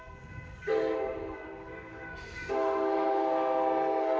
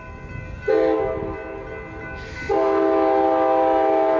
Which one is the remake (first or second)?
first